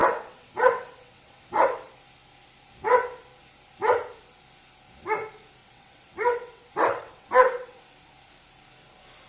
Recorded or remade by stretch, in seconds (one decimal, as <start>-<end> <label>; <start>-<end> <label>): 0.0-1.9 remade; 1.9-5.6 recorded; 5.6-7.8 remade; 7.8-9.3 recorded